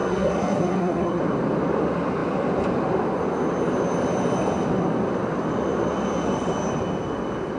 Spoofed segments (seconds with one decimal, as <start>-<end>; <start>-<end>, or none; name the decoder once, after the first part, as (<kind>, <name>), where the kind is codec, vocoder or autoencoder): 0.0-1.2 (codec, SNAC)